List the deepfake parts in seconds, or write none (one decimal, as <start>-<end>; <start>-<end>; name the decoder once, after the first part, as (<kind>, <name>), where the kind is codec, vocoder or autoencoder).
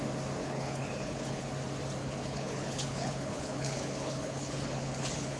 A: 0.4-1.5 (codec, HILCodec); 2.0-5.4